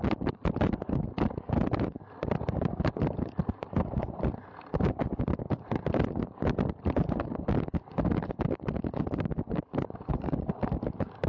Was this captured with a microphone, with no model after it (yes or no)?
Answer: yes